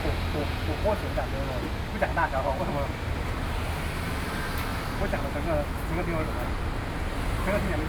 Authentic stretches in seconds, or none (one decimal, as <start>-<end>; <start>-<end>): 0.0-0.4; 1.1-7.9